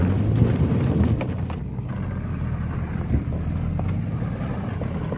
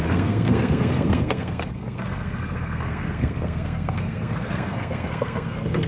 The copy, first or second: second